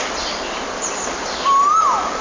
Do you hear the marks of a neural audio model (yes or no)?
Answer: no